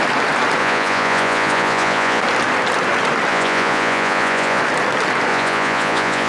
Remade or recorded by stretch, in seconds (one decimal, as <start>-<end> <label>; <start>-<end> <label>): 0.0-0.6 recorded; 0.6-2.2 remade; 2.2-3.3 recorded; 3.3-4.6 remade; 4.6-5.3 recorded; 5.3-6.3 remade